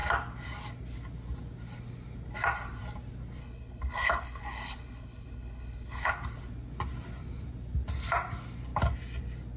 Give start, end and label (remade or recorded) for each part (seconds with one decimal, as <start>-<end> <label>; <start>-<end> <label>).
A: 0.0-3.4 recorded; 3.4-6.1 remade; 6.1-9.6 recorded